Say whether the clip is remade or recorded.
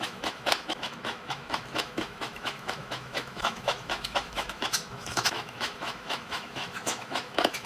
remade